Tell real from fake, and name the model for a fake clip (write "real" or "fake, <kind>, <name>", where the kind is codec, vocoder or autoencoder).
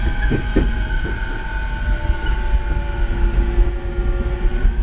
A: real